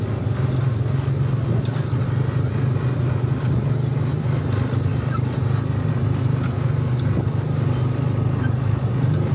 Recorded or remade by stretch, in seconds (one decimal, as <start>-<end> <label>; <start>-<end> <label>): 0.0-9.3 recorded